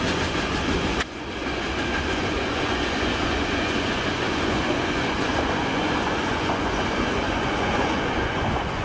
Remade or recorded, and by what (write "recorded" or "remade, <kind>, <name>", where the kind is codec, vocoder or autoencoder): remade, vocoder, Vocos